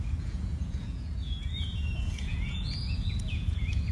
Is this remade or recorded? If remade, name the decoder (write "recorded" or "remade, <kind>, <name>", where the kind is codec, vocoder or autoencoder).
remade, vocoder, Vocos